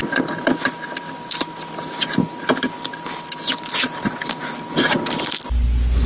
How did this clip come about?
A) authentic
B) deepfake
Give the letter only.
A